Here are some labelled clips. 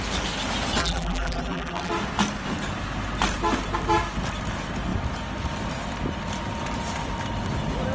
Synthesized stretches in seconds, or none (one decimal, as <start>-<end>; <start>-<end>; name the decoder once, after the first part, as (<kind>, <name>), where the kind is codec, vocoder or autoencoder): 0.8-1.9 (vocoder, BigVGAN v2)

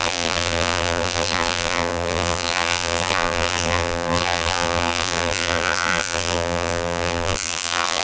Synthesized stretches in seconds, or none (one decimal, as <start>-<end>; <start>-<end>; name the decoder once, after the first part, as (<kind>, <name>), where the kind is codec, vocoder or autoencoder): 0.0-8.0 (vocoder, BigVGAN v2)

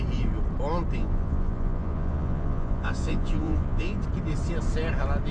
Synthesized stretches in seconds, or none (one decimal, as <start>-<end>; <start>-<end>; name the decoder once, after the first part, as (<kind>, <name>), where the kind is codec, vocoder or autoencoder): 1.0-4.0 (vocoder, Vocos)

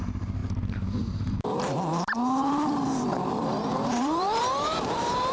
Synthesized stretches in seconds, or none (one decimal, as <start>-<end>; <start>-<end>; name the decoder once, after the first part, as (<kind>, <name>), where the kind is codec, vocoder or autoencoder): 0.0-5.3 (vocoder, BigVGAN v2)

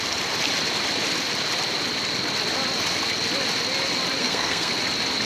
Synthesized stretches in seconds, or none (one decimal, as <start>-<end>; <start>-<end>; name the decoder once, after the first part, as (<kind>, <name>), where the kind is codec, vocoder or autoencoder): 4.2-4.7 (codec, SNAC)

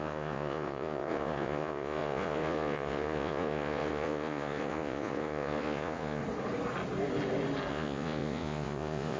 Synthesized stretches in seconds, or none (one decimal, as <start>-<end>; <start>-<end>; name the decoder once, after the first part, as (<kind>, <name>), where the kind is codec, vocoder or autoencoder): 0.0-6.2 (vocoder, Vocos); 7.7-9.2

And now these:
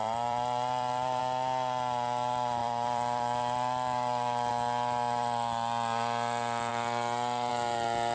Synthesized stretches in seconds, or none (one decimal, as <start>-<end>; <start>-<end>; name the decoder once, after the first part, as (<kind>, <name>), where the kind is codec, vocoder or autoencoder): 0.0-1.2 (vocoder, BigVGAN v2); 2.6-4.5; 6.7-7.5